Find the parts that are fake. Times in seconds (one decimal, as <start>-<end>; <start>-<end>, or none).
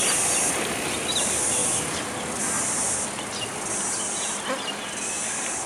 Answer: none